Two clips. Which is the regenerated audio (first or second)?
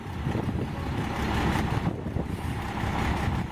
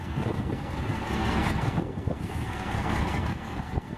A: second